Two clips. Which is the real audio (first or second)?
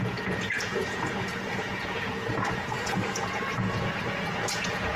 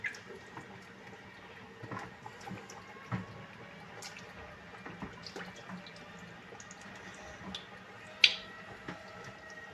second